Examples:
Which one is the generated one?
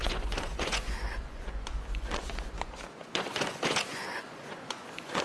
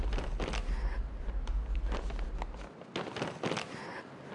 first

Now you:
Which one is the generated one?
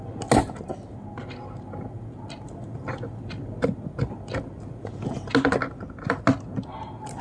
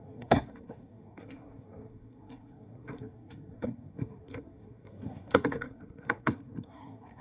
second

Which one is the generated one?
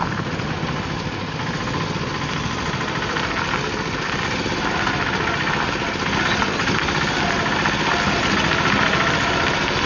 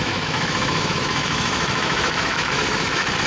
second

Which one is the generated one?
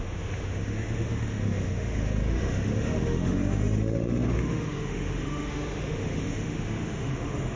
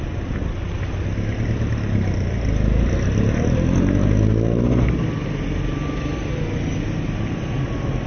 first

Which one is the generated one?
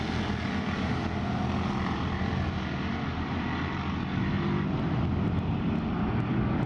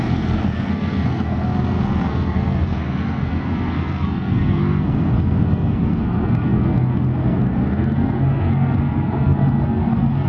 second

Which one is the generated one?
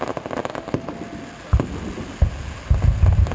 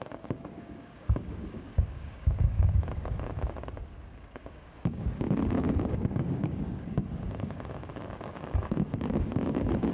second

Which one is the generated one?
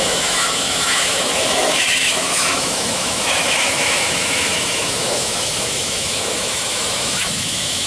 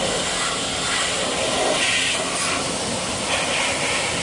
first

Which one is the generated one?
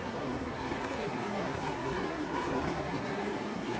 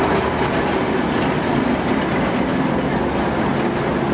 first